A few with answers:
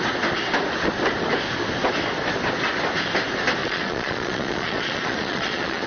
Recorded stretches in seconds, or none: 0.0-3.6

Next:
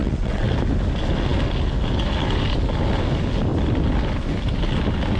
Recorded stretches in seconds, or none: 0.5-5.2

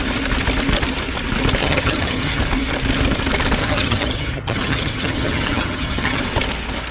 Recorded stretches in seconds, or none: 0.0-1.6; 2.4-3.6; 6.2-6.9

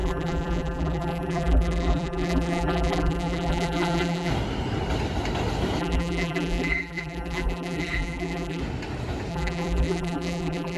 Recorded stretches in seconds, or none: 4.3-5.8; 8.6-9.3

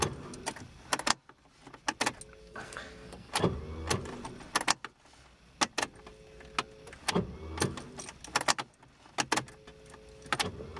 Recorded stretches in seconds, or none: 0.0-2.4; 3.3-10.8